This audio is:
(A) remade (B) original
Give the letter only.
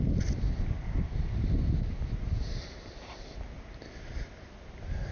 B